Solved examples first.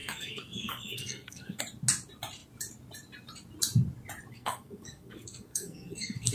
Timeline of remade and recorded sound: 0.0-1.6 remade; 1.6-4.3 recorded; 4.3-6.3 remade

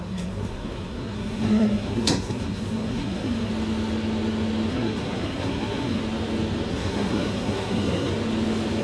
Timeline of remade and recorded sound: 0.0-3.5 remade; 3.5-4.7 recorded; 4.7-6.0 remade; 6.0-6.7 recorded; 6.7-8.1 remade; 8.1-8.8 recorded

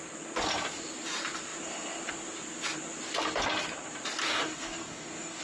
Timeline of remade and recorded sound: 0.0-4.2 recorded; 4.2-5.4 remade

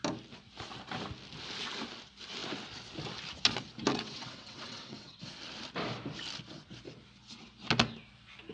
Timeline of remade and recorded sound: 0.0-3.9 recorded; 3.9-5.2 remade; 5.2-8.5 recorded

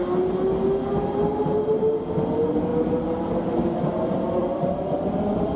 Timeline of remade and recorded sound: 0.0-4.4 recorded; 4.4-5.6 remade

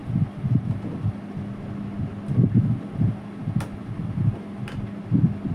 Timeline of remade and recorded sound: 0.0-5.5 recorded

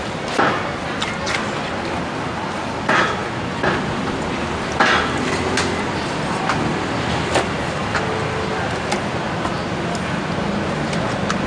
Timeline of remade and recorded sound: 0.0-11.5 recorded

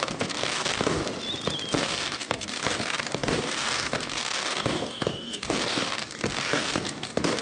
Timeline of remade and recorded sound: 0.0-1.0 remade; 1.0-1.8 recorded; 1.8-7.4 remade